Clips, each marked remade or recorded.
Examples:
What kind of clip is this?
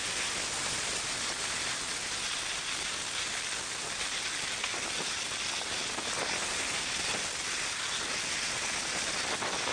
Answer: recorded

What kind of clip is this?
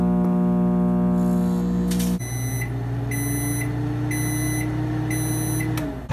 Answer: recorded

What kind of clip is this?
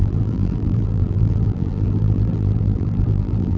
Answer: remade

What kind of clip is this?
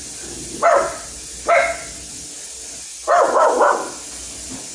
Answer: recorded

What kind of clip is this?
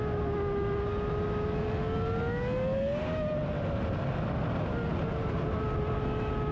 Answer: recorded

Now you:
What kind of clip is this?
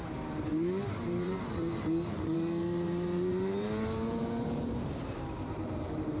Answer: remade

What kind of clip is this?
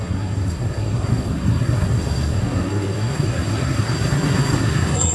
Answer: remade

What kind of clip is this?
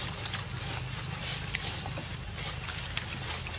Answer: recorded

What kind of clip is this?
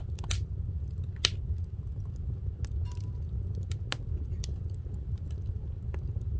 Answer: recorded